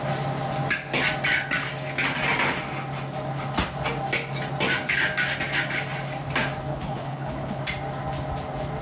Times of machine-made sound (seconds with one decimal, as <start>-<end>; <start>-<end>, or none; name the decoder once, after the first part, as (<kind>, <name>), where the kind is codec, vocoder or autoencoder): 6.7-7.6 (codec, HILCodec)